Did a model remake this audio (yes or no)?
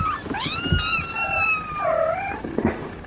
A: no